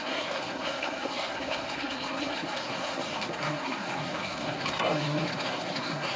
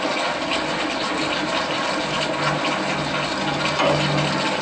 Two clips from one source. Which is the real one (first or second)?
second